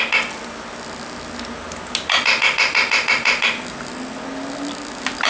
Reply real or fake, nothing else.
real